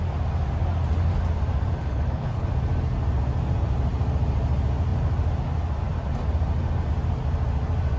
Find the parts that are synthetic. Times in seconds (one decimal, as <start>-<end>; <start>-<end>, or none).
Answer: 1.8-2.5